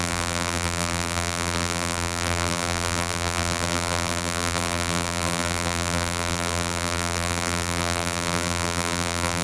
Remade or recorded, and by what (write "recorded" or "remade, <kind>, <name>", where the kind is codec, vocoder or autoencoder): remade, vocoder, BigVGAN v2